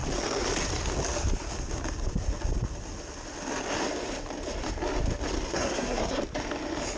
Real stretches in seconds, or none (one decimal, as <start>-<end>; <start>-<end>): 0.0-5.5; 6.2-7.0